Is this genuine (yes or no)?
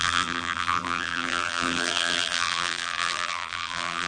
no